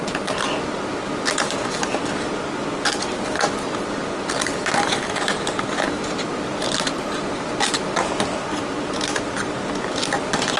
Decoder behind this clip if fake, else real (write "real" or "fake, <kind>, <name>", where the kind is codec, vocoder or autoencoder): real